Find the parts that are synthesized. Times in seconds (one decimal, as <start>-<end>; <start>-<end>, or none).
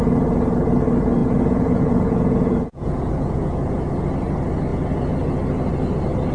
1.2-3.9